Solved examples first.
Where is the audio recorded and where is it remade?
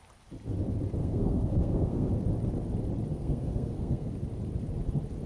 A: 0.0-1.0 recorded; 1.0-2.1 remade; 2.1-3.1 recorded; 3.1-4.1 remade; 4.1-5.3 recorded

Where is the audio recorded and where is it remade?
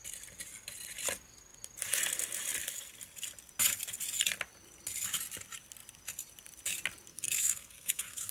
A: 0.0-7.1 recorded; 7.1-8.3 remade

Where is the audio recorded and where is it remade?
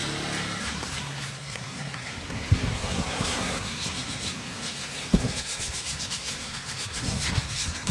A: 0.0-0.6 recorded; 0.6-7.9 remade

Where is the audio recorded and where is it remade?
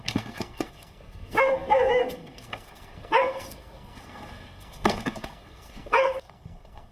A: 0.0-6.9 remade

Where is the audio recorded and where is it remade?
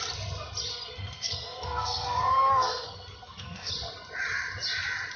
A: 0.0-0.7 recorded; 0.7-3.7 remade; 3.7-5.2 recorded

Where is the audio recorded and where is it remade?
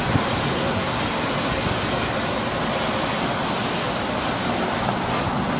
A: 0.0-0.5 recorded; 0.5-1.0 remade; 1.0-5.6 recorded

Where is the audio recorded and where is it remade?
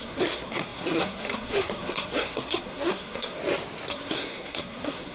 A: 0.0-3.4 remade; 3.4-3.9 recorded; 3.9-5.1 remade